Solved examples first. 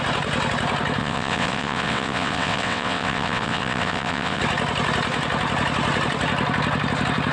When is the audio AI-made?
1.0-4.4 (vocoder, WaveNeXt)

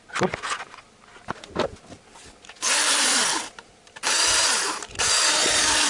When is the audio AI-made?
2.1-5.9 (vocoder, BigVGAN v2)

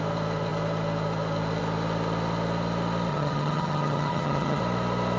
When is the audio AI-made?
3.1-4.6 (vocoder, HiFi-GAN)

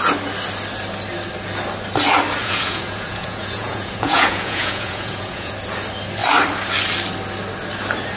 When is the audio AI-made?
2.4-5.5 (vocoder, Vocos)

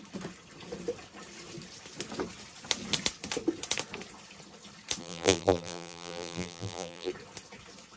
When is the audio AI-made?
5.0-7.1 (vocoder, BigVGAN v2)

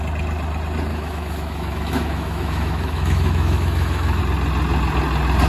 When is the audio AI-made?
0.9-4.2 (autoencoder, DAC-VAE)

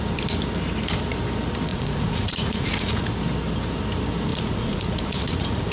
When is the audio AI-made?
1.7-3.1 (vocoder, Vocos); 4.3-5.7